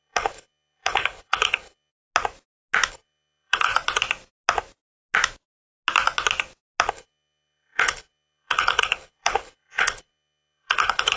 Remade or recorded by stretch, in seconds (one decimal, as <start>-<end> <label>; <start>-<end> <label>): 0.0-1.9 remade; 1.9-2.9 recorded; 2.9-3.7 remade; 3.7-6.9 recorded; 6.9-11.2 remade